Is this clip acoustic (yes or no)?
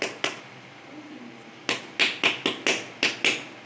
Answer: yes